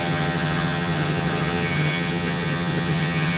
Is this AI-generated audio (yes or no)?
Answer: yes